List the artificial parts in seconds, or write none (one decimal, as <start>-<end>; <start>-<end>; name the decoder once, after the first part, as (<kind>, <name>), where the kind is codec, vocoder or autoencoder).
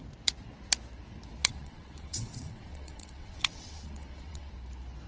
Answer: 1.4-4.5 (vocoder, WaveNeXt)